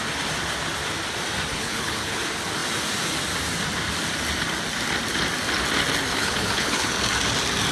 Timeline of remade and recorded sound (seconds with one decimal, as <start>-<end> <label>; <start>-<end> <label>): 0.0-1.5 recorded; 1.5-2.2 remade; 2.2-6.1 recorded; 6.1-6.9 remade; 6.9-7.7 recorded